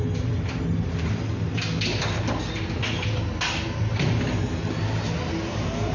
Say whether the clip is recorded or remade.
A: recorded